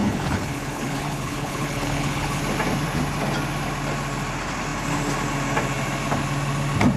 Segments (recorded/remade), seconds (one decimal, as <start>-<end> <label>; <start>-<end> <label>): 0.0-2.4 remade; 2.4-7.0 recorded